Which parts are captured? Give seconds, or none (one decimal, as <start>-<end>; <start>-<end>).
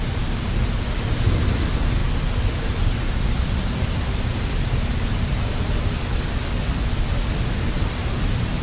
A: 0.0-8.6